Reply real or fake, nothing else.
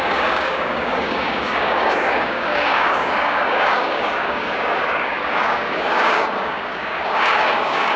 fake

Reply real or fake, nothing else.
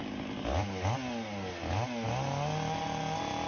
real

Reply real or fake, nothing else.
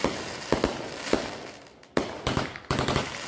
real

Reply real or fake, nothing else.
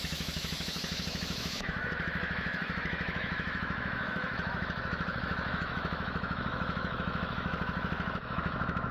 fake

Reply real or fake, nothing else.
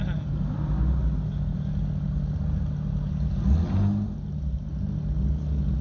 real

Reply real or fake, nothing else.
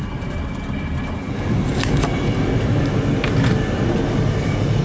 real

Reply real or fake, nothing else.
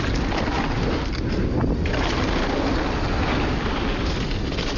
real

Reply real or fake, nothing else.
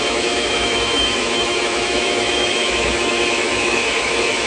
fake